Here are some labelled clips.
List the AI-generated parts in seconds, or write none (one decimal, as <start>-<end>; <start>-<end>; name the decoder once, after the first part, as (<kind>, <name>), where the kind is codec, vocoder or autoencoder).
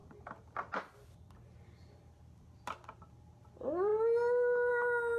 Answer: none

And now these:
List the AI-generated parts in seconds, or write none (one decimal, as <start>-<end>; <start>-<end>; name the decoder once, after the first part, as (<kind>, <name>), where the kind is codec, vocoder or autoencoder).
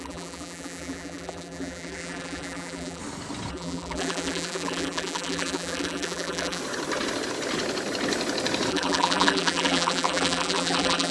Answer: 0.0-3.0 (vocoder, BigVGAN v2); 3.5-6.6; 8.7-11.1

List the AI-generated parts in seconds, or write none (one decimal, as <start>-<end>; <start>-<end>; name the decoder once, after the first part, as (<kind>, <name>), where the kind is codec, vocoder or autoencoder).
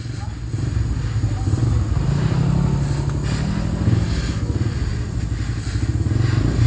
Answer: none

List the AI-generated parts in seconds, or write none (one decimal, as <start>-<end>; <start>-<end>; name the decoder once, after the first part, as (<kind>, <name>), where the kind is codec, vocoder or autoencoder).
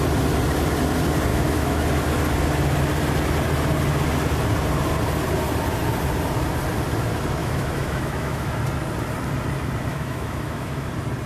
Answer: 1.3-1.8 (autoencoder, DAC-VAE); 7.4-8.6; 9.9-10.9